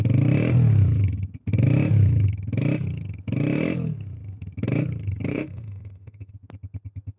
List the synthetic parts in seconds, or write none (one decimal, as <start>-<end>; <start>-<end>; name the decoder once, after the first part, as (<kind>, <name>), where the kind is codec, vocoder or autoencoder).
5.3-6.3 (autoencoder, DAC-VAE)